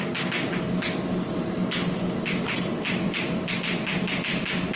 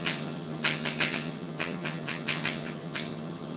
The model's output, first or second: second